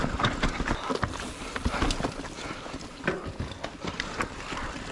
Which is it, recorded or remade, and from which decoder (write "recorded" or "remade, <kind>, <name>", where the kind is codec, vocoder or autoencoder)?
recorded